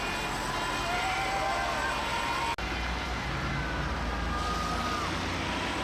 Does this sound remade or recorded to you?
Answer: recorded